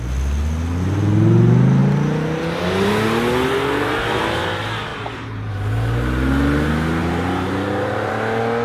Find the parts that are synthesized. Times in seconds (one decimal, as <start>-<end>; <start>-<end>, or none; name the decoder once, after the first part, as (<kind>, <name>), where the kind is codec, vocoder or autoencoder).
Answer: 4.9-5.5 (vocoder, BigVGAN v2); 7.0-8.1